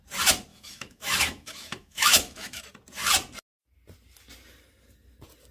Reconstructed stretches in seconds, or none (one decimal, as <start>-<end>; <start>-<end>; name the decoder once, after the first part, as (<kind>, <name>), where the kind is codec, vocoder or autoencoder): 0.5-2.6 (autoencoder, DAC-VAE)